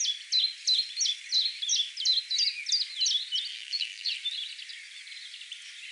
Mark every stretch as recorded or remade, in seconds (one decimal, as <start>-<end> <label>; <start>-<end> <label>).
0.0-3.5 recorded; 3.5-4.1 remade; 4.1-5.9 recorded